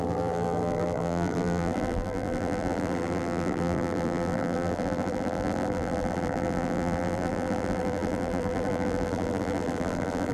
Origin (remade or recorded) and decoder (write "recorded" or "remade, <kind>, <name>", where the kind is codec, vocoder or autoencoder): remade, vocoder, BigVGAN v2